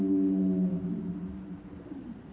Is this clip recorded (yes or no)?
yes